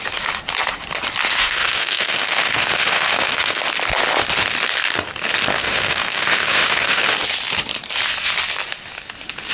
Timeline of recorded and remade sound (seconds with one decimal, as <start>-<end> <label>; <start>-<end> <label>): 0.0-1.4 recorded; 1.4-3.6 remade; 3.6-5.5 recorded; 5.5-7.0 remade; 7.0-9.5 recorded